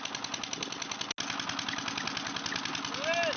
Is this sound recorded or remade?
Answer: recorded